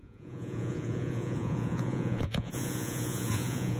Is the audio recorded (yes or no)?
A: no